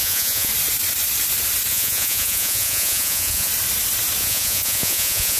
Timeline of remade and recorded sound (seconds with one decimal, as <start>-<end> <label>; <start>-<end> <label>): 0.0-0.5 remade; 0.5-1.7 recorded; 1.7-3.5 remade; 3.5-4.2 recorded; 4.2-5.4 remade